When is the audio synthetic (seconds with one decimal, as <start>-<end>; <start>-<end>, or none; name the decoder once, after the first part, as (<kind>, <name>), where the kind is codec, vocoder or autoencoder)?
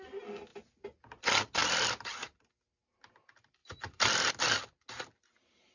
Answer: 3.6-4.3 (vocoder, BigVGAN v2)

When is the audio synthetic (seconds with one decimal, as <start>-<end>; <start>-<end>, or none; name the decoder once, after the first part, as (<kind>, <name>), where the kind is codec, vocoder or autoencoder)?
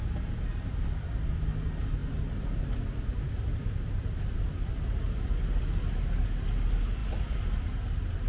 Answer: 3.6-5.4 (vocoder, BigVGAN v2)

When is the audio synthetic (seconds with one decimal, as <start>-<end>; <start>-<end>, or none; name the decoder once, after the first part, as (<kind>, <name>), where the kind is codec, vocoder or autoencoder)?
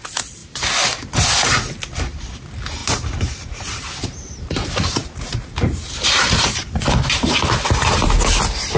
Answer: 2.8-6.8 (vocoder, BigVGAN v2)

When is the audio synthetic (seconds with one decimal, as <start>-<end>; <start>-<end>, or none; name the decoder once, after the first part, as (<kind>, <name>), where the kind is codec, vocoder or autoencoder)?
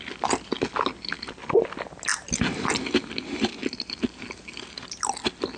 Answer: none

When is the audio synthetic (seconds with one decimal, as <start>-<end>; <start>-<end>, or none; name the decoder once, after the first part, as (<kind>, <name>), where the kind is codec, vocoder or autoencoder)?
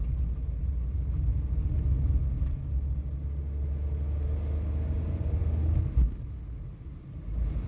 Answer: 0.0-1.3 (vocoder, BigVGAN v2); 4.9-5.4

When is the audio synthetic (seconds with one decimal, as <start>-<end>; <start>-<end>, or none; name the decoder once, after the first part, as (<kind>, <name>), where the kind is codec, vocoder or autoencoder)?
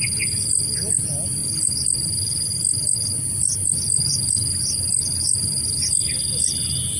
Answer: none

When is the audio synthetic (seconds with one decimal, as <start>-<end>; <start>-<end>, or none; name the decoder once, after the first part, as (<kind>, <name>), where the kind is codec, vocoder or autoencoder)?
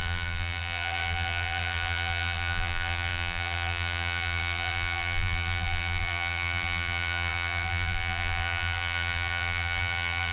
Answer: 0.0-10.3 (vocoder, BigVGAN v2)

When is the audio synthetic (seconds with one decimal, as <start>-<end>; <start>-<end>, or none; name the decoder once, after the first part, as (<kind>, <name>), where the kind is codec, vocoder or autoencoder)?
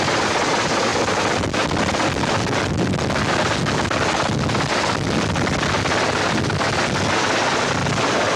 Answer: none